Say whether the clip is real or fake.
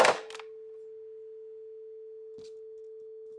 real